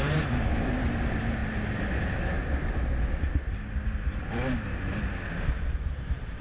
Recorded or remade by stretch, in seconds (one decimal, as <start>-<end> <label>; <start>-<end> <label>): 0.0-1.4 remade; 1.4-5.2 recorded; 5.2-6.4 remade